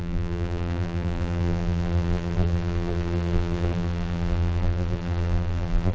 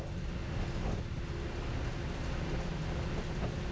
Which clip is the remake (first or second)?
first